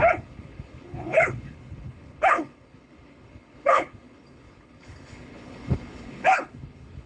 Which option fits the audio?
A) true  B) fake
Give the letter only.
B